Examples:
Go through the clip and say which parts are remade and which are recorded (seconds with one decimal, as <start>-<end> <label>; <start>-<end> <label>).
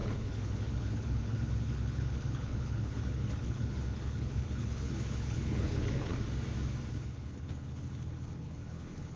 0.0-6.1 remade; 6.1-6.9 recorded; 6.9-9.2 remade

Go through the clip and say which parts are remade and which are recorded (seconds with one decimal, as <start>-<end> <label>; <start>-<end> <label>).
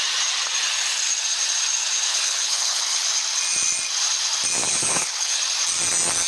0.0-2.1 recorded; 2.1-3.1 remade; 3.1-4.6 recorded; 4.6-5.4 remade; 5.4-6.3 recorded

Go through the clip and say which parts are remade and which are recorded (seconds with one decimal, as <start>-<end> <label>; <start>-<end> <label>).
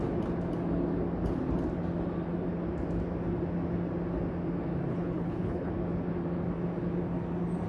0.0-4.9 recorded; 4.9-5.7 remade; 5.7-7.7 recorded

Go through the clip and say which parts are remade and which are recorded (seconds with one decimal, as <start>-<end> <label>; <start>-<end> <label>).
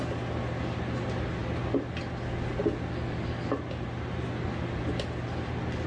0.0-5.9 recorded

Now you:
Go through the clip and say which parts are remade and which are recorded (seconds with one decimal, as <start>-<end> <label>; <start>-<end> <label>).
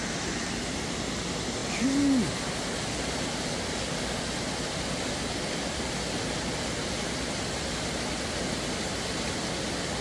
0.0-10.0 recorded